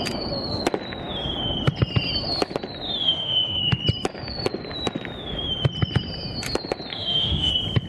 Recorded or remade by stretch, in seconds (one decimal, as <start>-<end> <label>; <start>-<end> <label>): 0.0-3.0 recorded; 3.0-3.8 remade; 3.8-6.9 recorded; 6.9-7.5 remade; 7.5-7.9 recorded